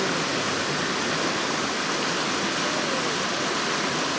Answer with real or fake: real